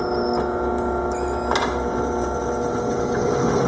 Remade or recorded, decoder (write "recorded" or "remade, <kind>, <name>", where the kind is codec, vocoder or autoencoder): recorded